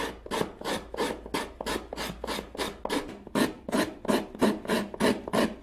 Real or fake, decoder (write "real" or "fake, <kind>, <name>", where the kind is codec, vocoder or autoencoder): real